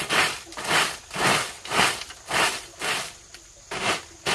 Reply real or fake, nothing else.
real